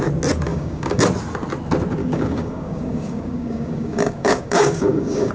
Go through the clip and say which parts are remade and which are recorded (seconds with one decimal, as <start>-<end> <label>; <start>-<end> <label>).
0.0-0.5 recorded; 0.5-1.0 remade; 1.0-2.0 recorded; 2.0-5.3 remade